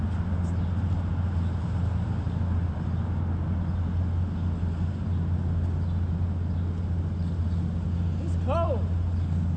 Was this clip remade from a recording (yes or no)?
no